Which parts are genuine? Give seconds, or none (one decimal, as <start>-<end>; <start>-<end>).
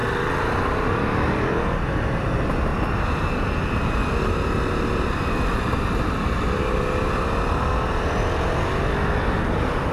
0.0-9.9